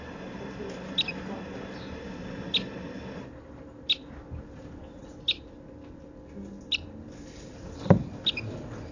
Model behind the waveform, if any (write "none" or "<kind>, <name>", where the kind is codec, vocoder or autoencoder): none